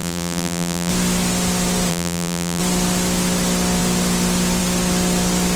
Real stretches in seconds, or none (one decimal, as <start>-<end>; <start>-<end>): 0.9-1.9; 2.6-5.6